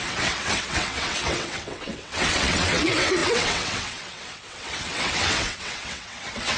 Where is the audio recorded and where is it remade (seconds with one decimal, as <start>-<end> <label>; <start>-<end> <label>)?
0.0-6.6 remade